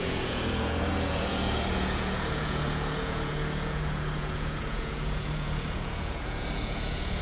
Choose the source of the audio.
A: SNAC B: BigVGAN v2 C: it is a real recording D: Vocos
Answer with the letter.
D